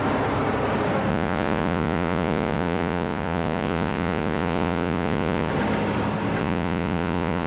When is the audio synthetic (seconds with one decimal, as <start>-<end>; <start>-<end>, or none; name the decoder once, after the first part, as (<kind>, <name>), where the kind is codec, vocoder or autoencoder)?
1.1-5.5 (vocoder, Vocos); 6.4-7.5